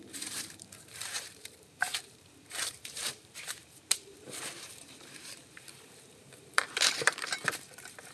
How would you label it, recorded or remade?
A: remade